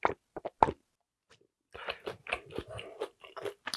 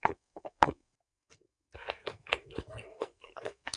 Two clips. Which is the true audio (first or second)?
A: first